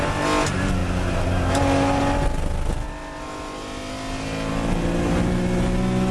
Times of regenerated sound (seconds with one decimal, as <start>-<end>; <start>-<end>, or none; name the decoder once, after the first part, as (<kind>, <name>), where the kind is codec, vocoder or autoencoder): none